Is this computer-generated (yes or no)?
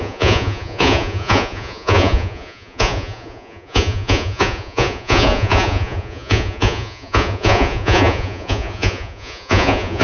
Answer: yes